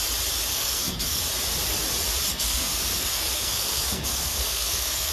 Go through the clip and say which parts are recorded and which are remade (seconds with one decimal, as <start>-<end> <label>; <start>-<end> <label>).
0.0-0.5 recorded; 0.5-1.2 remade; 1.2-2.3 recorded; 2.3-5.1 remade